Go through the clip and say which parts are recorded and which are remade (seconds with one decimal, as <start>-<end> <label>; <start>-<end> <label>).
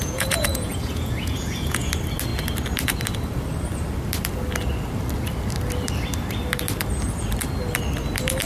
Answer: 0.0-1.9 remade; 1.9-8.5 recorded